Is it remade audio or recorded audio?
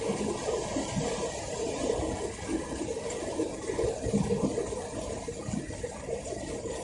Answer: recorded